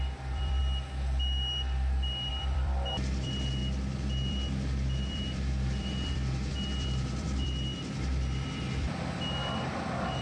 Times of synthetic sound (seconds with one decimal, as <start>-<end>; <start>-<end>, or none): 0.0-0.6; 2.3-3.6; 4.3-10.2